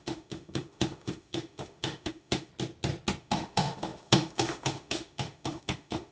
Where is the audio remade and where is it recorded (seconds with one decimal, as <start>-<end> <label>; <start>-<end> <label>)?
0.0-2.5 remade; 2.5-3.2 recorded; 3.2-6.1 remade